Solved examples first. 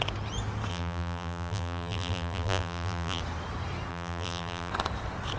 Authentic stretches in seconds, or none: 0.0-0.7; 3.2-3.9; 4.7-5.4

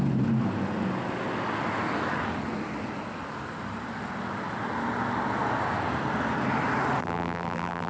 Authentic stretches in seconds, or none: 0.0-7.0